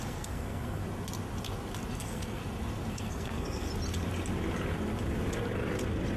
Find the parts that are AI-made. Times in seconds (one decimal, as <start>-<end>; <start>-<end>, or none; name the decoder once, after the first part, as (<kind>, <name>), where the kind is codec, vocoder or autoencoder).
0.0-0.8 (codec, SNAC); 2.0-2.4; 2.9-3.7